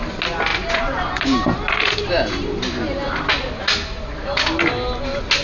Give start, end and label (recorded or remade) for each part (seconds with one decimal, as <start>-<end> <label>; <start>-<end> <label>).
0.0-0.5 recorded; 0.5-3.6 remade; 3.6-5.4 recorded